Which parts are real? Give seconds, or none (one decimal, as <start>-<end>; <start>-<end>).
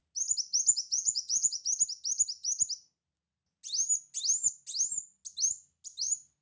0.0-0.7; 1.6-6.4